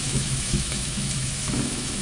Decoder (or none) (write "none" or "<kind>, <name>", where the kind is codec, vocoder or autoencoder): autoencoder, DAC-VAE